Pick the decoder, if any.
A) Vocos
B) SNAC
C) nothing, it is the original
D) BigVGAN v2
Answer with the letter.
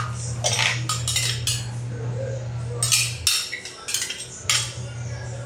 C